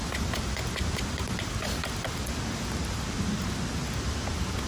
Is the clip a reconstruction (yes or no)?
no